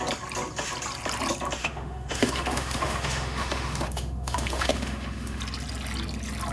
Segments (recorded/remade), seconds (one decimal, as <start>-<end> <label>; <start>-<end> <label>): 0.0-1.6 recorded; 1.6-5.4 remade; 5.4-6.5 recorded